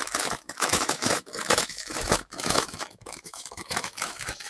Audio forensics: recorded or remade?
remade